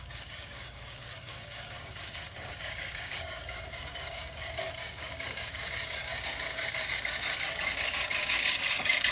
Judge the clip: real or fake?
fake